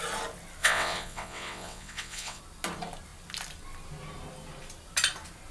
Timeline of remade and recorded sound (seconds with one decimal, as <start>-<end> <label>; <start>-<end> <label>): 0.0-0.6 recorded; 0.6-2.4 remade; 2.4-5.5 recorded